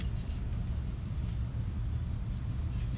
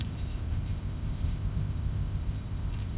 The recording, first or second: first